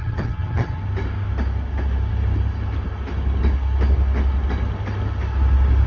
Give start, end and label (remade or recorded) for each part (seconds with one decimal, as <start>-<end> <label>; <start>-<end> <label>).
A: 0.0-0.8 remade; 0.8-5.9 recorded